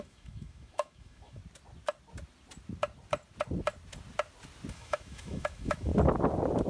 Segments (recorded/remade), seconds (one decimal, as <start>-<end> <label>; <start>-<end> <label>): 0.0-1.4 remade; 1.4-4.7 recorded; 4.7-5.9 remade; 5.9-6.7 recorded